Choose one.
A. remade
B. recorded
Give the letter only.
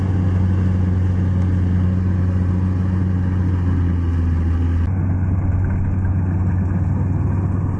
B